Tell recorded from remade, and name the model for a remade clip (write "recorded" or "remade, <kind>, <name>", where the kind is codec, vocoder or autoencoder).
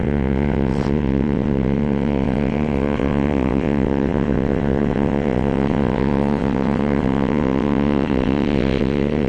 remade, vocoder, WaveNeXt